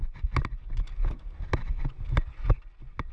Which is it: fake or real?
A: real